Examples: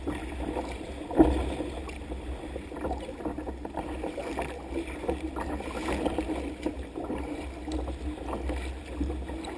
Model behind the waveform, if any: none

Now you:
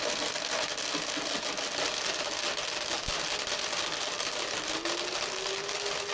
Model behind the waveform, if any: none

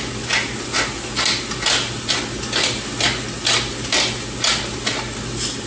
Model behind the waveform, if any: none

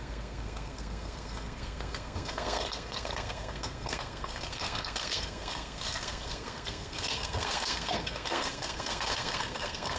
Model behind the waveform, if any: codec, SNAC